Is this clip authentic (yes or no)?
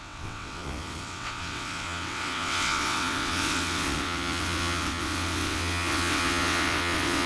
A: no